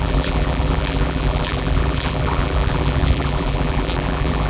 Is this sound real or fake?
fake